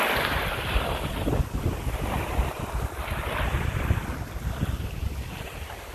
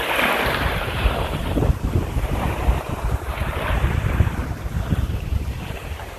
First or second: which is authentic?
first